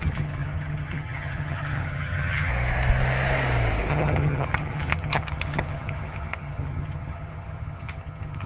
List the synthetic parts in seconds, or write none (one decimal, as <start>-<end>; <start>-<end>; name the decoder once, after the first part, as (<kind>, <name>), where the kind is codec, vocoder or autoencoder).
0.0-2.5 (vocoder, HiFi-GAN); 3.9-8.5